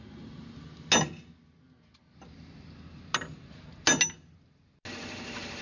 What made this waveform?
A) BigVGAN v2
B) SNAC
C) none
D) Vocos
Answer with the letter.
C